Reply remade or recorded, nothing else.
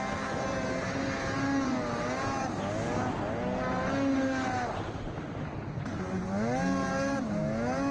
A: recorded